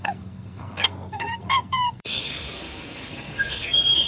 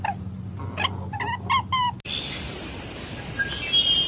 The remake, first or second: first